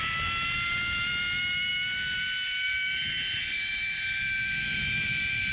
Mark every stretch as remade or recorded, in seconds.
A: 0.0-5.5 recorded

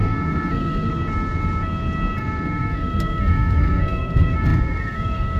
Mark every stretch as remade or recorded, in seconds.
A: 0.0-0.9 remade; 0.9-2.2 recorded; 2.2-5.4 remade

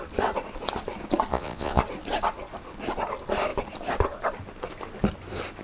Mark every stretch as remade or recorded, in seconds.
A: 0.0-1.3 recorded; 1.3-1.8 remade; 1.8-5.6 recorded

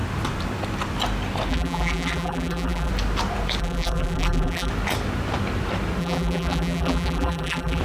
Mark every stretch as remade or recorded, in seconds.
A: 0.0-1.5 recorded; 1.5-2.9 remade; 2.9-3.6 recorded; 3.6-4.7 remade; 4.7-6.0 recorded; 6.0-7.8 remade